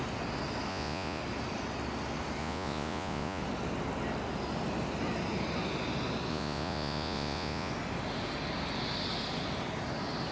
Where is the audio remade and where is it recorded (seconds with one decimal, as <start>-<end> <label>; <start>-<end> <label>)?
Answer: 0.0-0.7 recorded; 0.7-1.2 remade; 1.2-2.4 recorded; 2.4-3.4 remade; 3.4-6.3 recorded; 6.3-7.7 remade; 7.7-10.3 recorded